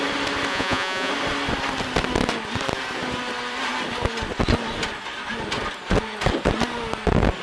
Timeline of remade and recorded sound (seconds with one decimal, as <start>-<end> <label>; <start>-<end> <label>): 0.0-0.5 recorded; 0.5-1.1 remade; 1.1-7.4 recorded